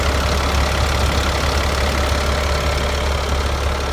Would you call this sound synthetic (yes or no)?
no